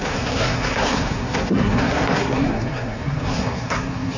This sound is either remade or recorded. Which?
remade